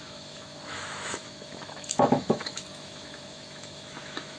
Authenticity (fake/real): fake